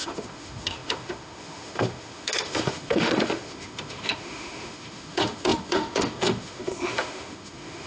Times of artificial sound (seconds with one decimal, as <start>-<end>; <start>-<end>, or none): 0.0-7.9